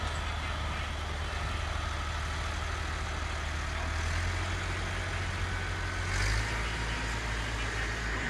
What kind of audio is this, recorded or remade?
recorded